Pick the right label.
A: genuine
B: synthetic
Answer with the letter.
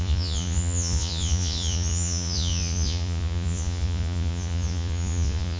B